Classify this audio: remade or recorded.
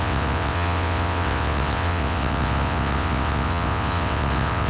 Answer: remade